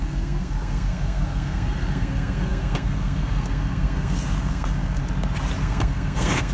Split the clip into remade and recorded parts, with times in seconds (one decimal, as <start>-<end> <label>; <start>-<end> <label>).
0.0-5.0 remade; 5.0-5.6 recorded; 5.6-6.5 remade